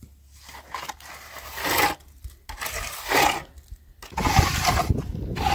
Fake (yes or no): no